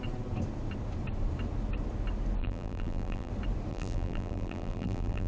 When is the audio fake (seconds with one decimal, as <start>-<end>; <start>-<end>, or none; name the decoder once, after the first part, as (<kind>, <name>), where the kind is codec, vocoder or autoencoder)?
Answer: 2.4-3.3 (vocoder, BigVGAN v2); 3.7-5.3